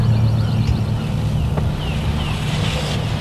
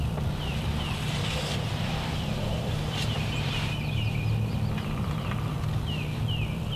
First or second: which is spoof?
second